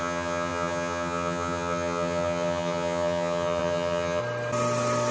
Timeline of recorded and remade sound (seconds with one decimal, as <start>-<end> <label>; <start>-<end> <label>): 0.0-4.2 remade; 4.2-5.1 recorded